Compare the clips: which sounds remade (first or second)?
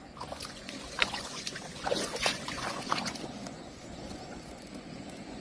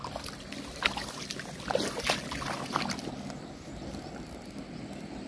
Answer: first